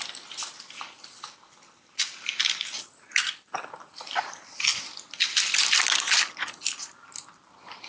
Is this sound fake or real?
real